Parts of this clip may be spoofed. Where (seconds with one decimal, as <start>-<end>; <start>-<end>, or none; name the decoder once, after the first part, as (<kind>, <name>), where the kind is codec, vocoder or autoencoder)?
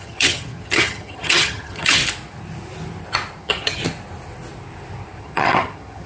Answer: 0.0-2.0 (vocoder, HiFi-GAN); 3.4-3.8; 5.2-6.1